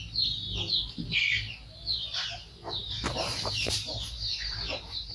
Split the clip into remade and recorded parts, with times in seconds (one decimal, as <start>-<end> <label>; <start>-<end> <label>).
0.0-2.8 recorded; 2.8-5.1 remade